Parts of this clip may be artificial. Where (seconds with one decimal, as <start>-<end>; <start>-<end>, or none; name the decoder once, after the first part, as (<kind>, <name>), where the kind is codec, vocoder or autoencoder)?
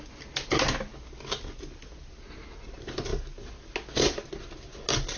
none